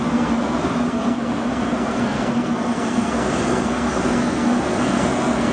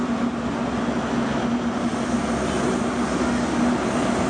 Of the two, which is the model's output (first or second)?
first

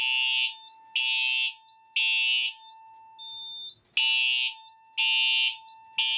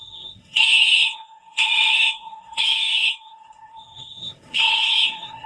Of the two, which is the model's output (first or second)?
second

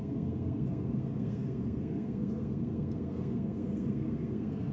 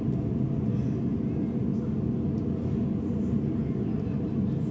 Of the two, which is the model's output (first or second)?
first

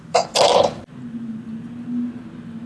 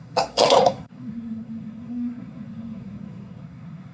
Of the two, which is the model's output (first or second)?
second